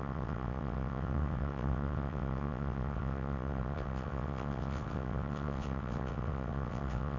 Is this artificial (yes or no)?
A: yes